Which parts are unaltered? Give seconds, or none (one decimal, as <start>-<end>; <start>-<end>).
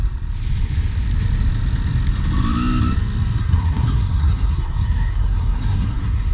0.0-3.4